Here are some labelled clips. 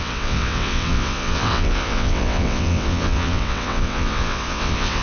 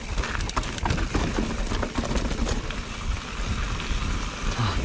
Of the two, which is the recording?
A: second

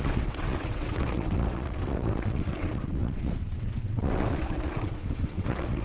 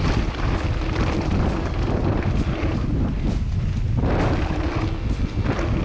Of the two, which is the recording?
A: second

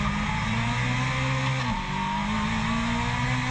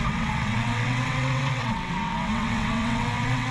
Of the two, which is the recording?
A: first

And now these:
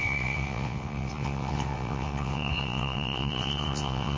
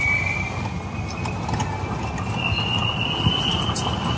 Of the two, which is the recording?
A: second